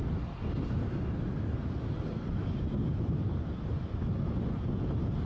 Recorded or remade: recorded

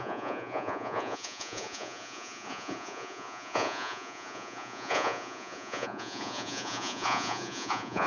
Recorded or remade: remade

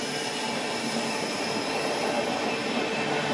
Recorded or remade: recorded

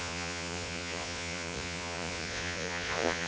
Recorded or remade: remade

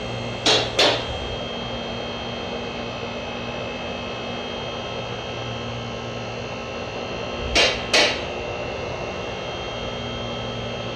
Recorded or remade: recorded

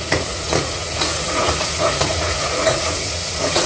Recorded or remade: remade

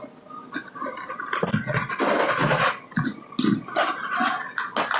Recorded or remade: recorded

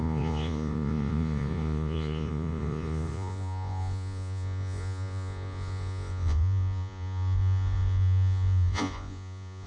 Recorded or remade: remade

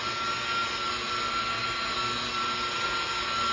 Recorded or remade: recorded